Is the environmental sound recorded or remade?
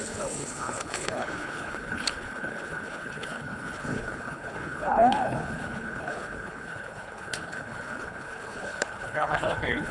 remade